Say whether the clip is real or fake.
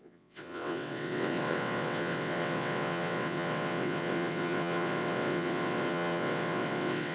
fake